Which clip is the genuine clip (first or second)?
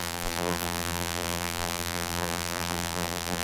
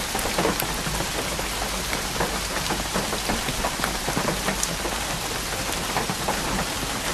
second